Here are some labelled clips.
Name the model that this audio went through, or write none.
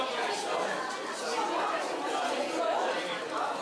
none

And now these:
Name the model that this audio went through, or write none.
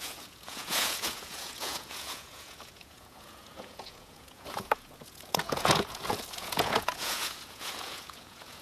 vocoder, Vocos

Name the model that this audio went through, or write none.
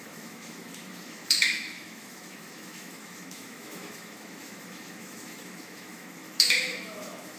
autoencoder, DAC-VAE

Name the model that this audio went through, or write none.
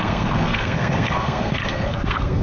codec, SNAC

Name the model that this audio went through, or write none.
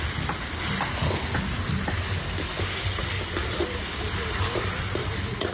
none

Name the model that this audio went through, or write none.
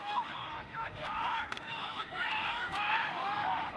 autoencoder, DAC-VAE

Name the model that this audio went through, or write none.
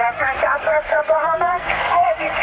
codec, SNAC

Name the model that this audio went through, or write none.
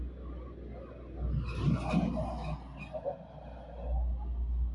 none